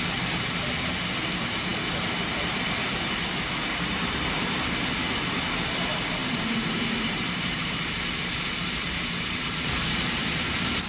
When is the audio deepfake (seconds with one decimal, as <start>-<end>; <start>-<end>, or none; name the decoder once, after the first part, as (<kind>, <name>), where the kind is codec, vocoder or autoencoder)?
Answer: 6.2-9.6 (vocoder, BigVGAN v2)